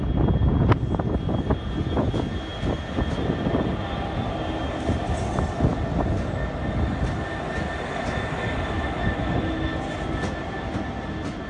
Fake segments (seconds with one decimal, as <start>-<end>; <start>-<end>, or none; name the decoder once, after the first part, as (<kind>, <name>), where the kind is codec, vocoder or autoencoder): none